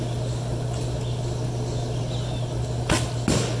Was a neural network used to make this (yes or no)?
no